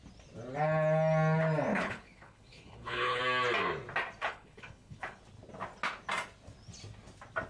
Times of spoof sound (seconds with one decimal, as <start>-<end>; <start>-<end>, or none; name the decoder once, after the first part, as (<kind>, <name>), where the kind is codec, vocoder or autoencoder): 1.7-3.2 (codec, HILCodec); 4.2-5.2